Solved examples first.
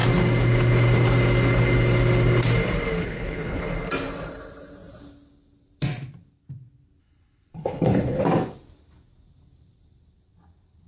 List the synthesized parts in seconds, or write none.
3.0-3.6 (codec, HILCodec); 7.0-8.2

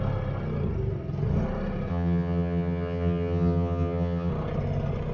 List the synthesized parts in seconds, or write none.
1.9-4.3 (vocoder, HiFi-GAN)

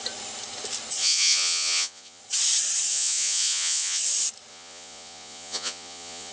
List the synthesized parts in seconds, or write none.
1.0-2.2 (vocoder, Vocos); 2.9-4.0; 4.5-6.3

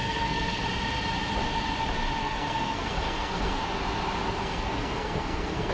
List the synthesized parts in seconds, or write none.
0.0-0.6 (codec, SNAC); 2.2-3.6; 4.4-5.7

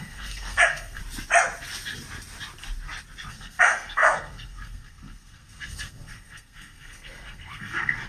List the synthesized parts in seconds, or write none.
0.0-1.0 (codec, SNAC); 3.3-8.1

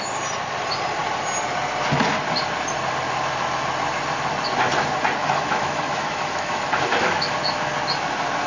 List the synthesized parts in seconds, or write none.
5.2-7.3 (autoencoder, DAC-VAE)